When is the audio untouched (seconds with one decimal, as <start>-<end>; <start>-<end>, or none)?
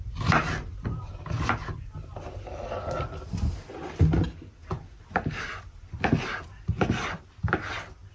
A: 0.0-8.1